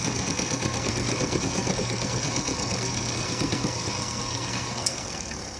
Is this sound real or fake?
fake